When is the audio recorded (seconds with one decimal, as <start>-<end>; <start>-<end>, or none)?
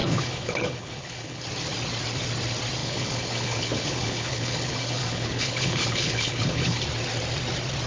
1.4-2.8; 6.8-7.9